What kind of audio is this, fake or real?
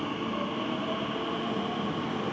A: real